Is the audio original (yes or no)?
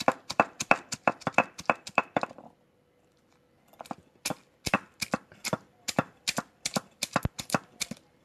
no